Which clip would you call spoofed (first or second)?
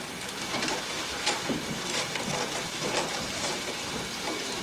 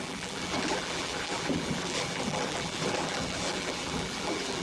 second